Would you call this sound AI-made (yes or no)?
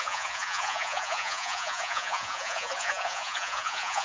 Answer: yes